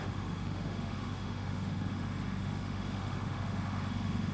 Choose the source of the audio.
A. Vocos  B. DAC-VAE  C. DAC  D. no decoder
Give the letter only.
B